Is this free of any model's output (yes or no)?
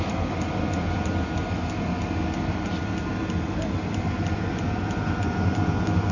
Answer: yes